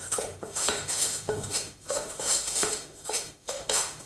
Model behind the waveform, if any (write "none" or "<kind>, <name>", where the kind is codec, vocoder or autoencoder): autoencoder, DAC-VAE